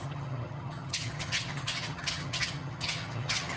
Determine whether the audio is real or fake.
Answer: fake